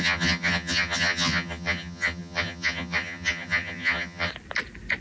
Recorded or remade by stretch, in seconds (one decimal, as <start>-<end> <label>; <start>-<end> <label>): 0.0-4.3 remade; 4.3-5.0 recorded